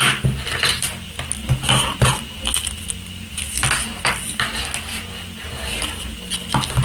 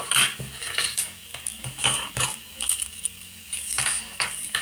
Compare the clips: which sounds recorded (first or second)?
first